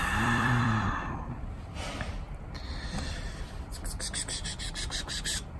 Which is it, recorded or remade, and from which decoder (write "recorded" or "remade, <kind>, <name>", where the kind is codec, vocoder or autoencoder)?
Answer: remade, vocoder, BigVGAN v2